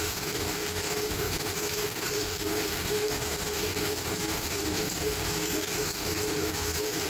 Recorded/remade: remade